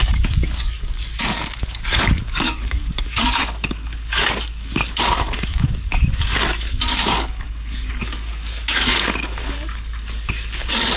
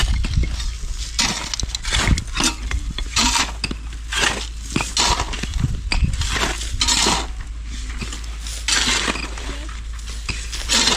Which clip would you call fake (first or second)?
first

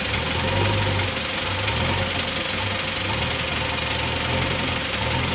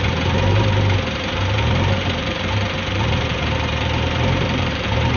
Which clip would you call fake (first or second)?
second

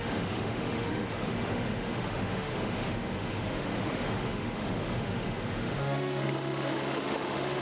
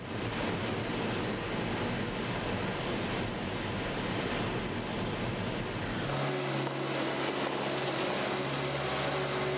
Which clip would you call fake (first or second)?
first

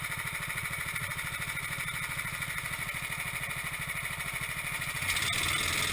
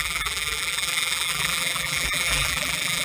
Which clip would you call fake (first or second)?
second